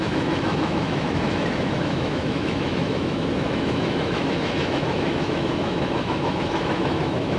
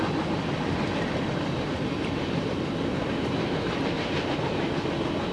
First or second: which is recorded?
second